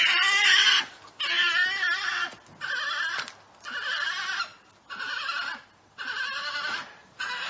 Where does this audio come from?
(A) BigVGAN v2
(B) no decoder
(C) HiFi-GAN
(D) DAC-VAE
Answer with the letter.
B